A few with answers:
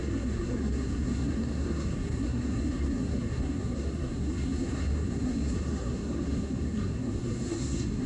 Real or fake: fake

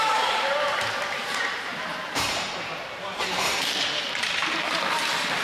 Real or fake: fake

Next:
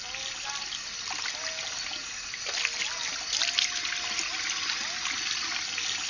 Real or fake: real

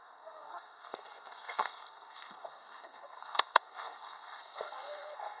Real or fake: fake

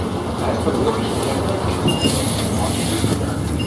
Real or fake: real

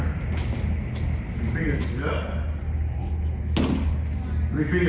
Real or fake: real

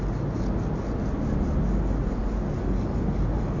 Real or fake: real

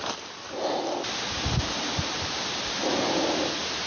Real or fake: real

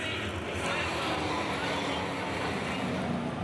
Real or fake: real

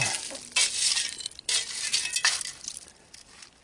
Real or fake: real